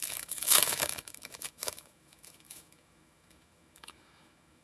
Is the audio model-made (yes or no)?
yes